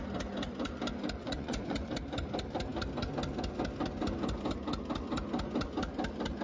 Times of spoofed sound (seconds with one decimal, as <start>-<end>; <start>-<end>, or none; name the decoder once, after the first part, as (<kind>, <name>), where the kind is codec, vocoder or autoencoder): 1.2-1.9 (vocoder, Vocos)